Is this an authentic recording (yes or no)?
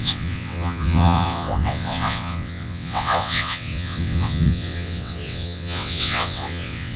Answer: no